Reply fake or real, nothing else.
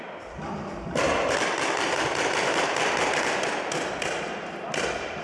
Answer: fake